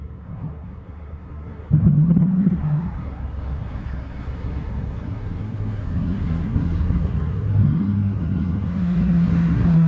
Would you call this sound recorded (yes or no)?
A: no